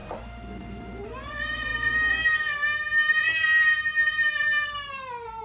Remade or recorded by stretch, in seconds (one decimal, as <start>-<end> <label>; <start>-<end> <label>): 0.0-5.4 recorded